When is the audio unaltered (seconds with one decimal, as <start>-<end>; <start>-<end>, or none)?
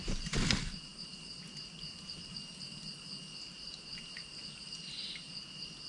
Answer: 0.0-5.9